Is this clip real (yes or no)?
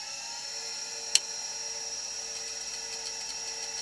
yes